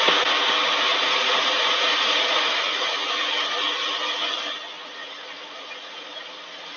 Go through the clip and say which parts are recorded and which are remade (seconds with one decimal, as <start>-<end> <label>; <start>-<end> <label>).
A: 0.0-0.9 recorded; 0.9-3.0 remade; 3.0-5.0 recorded; 5.0-6.8 remade